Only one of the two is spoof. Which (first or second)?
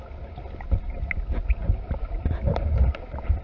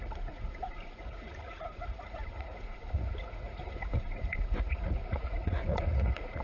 second